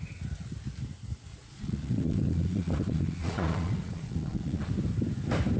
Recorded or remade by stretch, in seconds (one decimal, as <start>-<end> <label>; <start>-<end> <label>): 0.0-1.3 recorded; 1.3-4.7 remade; 4.7-5.6 recorded